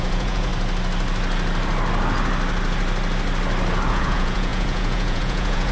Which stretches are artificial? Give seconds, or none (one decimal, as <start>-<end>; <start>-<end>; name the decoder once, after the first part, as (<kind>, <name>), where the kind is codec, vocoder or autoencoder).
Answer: 0.0-0.5 (vocoder, Vocos); 3.9-5.7